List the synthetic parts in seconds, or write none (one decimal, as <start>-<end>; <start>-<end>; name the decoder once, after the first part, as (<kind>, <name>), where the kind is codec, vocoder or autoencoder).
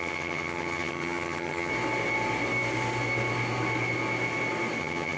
0.0-1.7 (vocoder, HiFi-GAN); 4.8-5.2